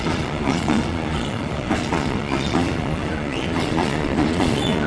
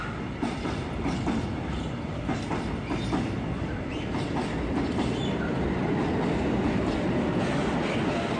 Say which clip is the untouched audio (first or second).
second